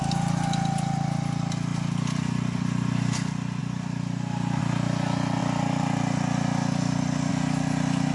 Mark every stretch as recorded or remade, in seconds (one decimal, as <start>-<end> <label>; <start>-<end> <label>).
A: 0.0-3.6 recorded; 3.6-4.6 remade; 4.6-8.1 recorded